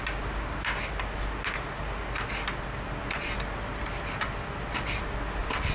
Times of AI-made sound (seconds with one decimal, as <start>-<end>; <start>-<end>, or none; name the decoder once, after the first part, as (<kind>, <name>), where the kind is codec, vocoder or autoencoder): none